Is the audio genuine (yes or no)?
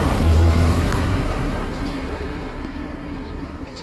no